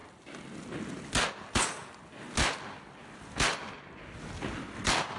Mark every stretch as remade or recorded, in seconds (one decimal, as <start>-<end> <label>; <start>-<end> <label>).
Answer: 0.0-5.2 recorded